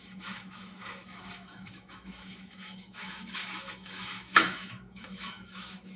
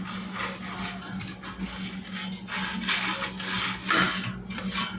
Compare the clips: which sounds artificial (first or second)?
first